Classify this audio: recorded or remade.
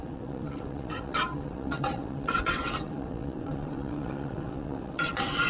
remade